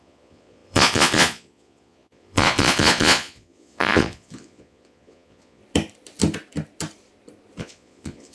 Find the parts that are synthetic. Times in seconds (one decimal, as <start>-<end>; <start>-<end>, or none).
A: 0.0-5.6; 7.6-8.3